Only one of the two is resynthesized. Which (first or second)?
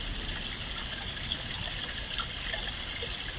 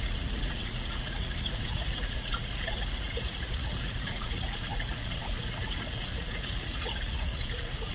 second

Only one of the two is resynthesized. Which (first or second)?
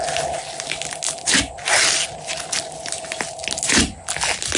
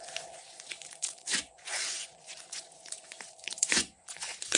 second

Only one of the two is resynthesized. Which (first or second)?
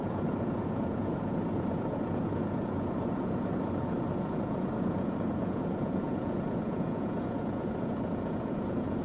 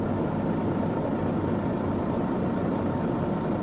first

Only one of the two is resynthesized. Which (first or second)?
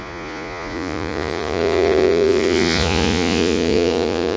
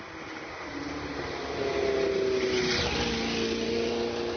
first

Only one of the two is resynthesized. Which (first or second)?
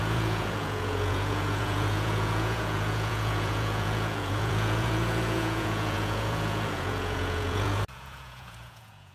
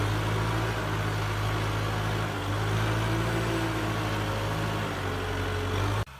first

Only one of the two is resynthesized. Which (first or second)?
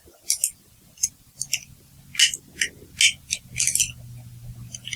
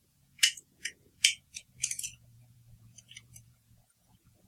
second